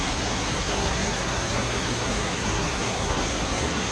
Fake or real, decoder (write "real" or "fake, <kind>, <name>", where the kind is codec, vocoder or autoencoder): fake, codec, SNAC